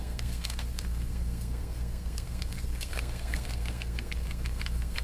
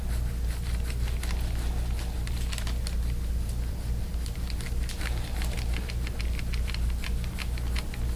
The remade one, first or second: first